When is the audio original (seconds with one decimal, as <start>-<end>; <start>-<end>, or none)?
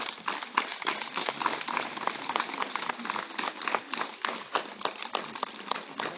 0.0-0.7; 1.3-6.2